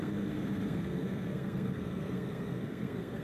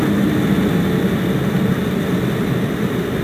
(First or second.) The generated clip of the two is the first